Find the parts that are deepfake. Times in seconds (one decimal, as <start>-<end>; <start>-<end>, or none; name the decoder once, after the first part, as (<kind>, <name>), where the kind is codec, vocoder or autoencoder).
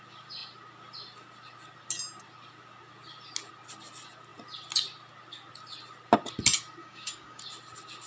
6.8-7.4 (codec, DAC)